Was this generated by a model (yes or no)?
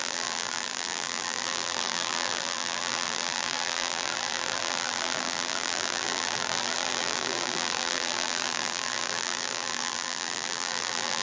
yes